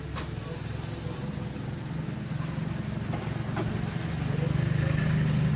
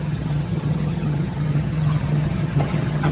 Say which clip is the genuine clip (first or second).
first